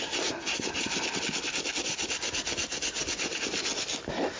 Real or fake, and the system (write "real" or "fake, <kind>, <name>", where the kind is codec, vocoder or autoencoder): real